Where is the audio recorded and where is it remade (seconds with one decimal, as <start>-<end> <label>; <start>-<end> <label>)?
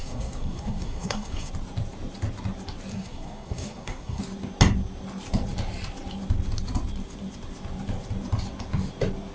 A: 0.0-1.5 remade; 1.5-2.9 recorded; 2.9-4.2 remade; 4.2-9.3 recorded